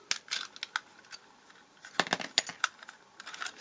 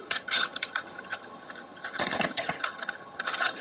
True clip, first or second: first